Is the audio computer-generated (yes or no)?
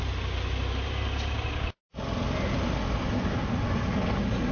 no